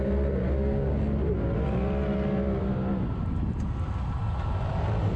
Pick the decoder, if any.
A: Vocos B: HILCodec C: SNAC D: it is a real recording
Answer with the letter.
D